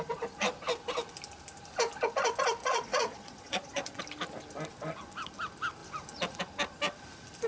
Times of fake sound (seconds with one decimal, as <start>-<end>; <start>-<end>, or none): 2.6-4.0